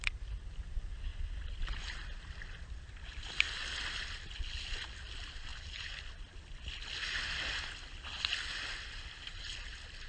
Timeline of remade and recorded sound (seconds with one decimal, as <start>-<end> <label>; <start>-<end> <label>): 0.0-10.1 recorded